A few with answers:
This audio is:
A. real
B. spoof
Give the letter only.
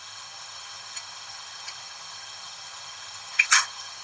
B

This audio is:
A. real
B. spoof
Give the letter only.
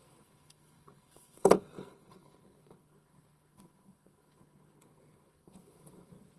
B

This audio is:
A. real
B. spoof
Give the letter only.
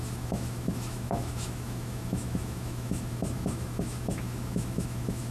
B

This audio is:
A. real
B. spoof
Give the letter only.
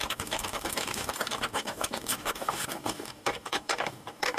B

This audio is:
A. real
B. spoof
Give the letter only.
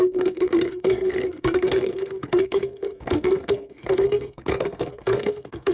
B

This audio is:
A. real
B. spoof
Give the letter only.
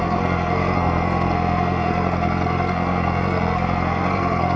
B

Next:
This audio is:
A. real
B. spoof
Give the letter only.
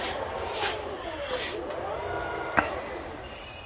A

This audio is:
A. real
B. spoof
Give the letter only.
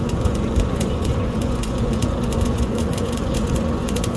B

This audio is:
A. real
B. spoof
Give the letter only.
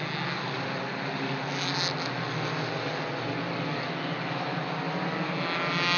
A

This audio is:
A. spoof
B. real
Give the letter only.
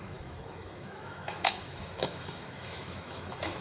A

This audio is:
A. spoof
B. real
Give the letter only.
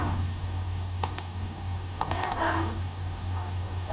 A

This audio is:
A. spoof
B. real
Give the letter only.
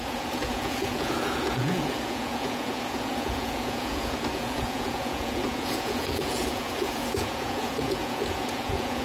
A